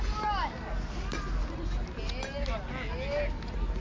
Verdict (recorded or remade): recorded